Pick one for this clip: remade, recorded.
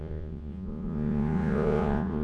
remade